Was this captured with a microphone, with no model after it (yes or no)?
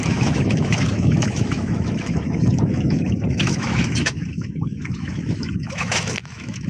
no